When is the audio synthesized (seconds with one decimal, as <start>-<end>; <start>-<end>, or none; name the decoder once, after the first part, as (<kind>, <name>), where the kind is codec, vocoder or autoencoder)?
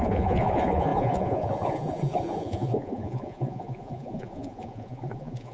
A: 0.0-5.5 (vocoder, Vocos)